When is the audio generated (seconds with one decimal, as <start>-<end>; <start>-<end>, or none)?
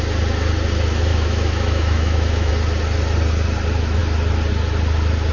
1.1-2.5